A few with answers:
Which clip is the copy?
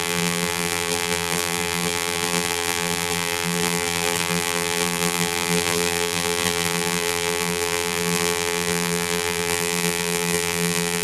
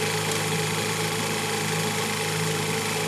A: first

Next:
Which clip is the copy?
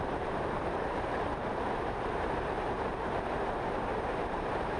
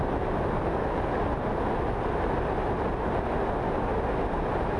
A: first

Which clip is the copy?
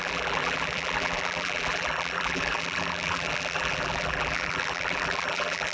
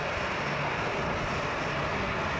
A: first